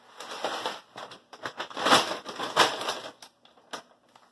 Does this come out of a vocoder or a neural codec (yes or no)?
no